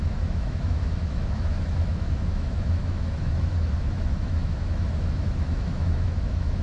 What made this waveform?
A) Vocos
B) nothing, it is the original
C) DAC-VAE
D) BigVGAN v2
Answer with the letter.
C